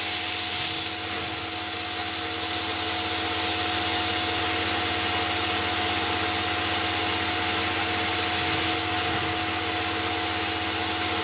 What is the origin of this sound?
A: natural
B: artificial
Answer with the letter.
A